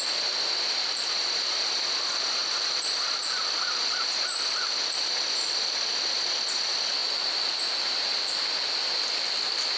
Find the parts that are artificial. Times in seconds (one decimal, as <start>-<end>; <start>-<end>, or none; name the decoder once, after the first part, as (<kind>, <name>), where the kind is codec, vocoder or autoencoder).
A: none